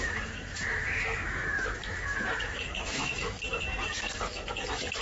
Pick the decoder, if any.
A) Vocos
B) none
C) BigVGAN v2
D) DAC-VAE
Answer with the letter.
D